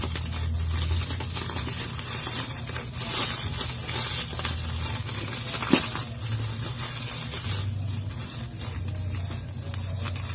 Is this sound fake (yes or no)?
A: no